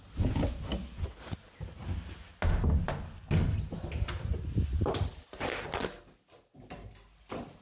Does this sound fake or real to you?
real